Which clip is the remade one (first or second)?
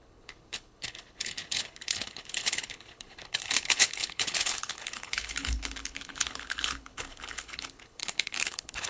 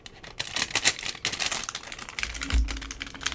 first